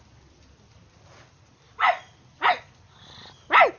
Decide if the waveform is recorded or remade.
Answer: recorded